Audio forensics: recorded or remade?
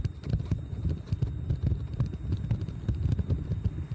recorded